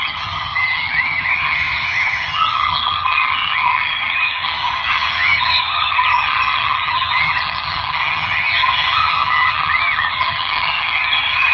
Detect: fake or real fake